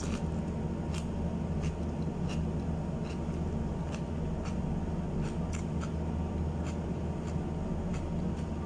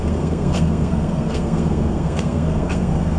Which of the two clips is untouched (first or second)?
first